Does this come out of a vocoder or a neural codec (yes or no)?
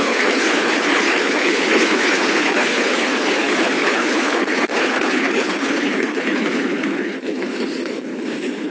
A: yes